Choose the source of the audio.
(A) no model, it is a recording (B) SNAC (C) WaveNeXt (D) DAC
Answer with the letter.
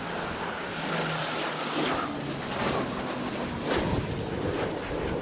A